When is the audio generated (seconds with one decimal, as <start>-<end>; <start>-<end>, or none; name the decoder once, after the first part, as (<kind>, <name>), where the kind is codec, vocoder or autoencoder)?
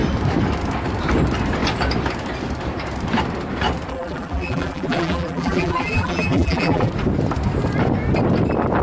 3.9-6.9 (vocoder, BigVGAN v2)